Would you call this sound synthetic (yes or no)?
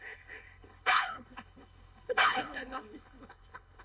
yes